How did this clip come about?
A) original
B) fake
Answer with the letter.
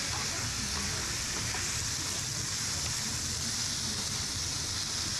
A